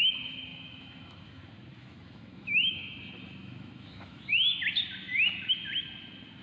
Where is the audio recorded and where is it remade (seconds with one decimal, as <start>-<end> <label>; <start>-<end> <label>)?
0.0-0.5 recorded; 0.5-1.4 remade; 1.4-1.8 recorded; 1.8-3.0 remade; 3.0-3.4 recorded; 3.4-4.2 remade; 4.2-6.4 recorded